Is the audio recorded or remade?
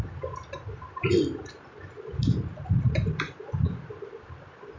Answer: recorded